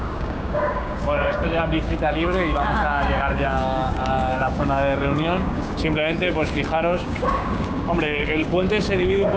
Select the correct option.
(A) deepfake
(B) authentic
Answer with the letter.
A